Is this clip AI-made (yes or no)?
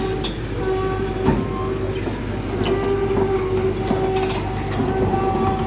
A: no